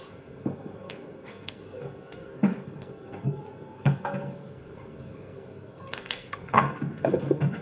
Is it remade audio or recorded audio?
remade